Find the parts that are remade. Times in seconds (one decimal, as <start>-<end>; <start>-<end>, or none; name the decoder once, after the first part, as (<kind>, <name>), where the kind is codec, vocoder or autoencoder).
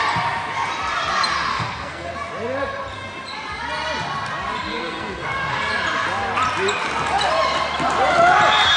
1.5-2.1 (codec, SNAC); 4.7-5.6